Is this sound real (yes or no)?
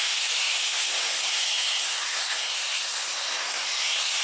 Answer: no